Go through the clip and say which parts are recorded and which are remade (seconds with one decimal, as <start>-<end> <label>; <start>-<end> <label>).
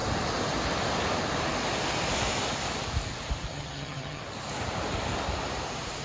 0.0-3.5 recorded; 3.5-4.2 remade; 4.2-6.0 recorded